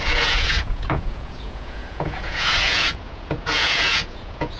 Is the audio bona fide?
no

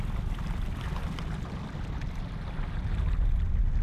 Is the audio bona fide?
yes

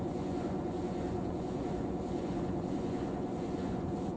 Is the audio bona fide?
no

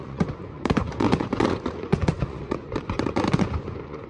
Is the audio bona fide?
no